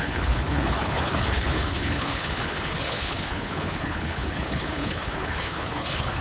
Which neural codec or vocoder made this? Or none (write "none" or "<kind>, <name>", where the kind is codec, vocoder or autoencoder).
codec, HILCodec